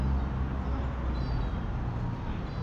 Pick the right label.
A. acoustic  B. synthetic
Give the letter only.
A